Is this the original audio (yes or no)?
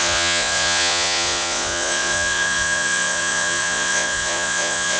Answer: no